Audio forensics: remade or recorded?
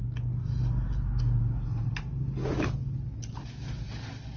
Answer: recorded